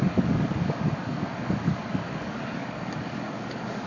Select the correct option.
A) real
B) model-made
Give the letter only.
B